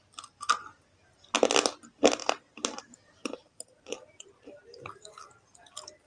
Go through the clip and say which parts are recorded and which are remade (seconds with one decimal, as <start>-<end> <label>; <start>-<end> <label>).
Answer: 0.0-2.2 recorded; 2.2-4.3 remade; 4.3-6.1 recorded